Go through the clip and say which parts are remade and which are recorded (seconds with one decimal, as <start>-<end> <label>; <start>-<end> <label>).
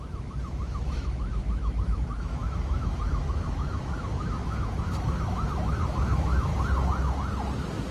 0.0-6.5 remade; 6.5-7.9 recorded